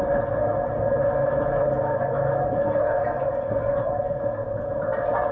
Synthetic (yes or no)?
no